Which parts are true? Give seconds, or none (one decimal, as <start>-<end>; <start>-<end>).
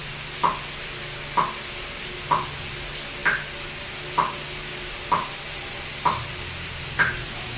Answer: 0.0-7.6